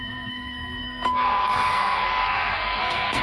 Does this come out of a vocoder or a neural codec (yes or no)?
yes